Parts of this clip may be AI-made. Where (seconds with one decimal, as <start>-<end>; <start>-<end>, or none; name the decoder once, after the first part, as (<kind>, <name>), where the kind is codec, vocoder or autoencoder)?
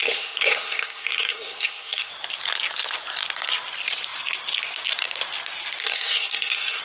0.0-2.1 (codec, SNAC); 5.8-6.8